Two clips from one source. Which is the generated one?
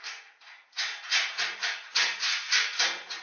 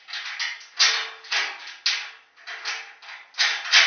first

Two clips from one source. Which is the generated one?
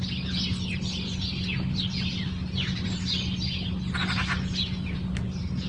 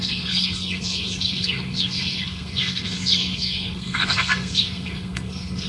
second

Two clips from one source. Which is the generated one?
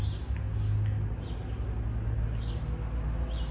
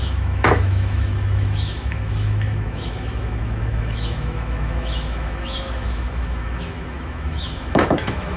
second